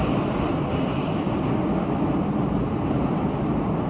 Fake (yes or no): no